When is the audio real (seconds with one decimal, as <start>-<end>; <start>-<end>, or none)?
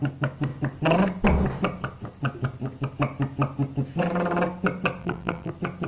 0.0-5.0; 5.5-5.9